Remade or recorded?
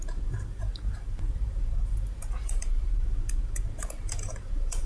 remade